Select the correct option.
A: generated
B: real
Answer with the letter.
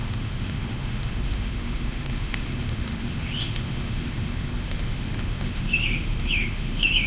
A